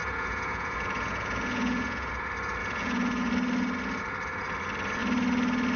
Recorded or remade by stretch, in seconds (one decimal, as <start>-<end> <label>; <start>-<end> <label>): 0.0-2.1 remade; 2.1-2.6 recorded; 2.6-3.3 remade; 3.3-5.8 recorded